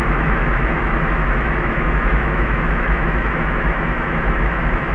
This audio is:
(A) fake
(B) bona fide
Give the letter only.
A